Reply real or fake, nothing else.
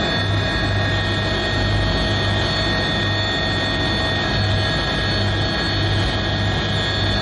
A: real